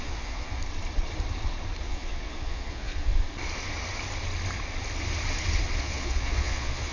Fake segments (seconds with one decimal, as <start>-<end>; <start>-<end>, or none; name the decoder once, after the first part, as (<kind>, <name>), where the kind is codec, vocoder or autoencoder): 0.0-0.6 (vocoder, Vocos); 1.8-3.1; 5.8-6.9